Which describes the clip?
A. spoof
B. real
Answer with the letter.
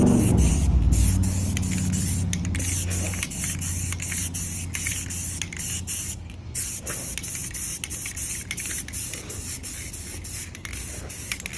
B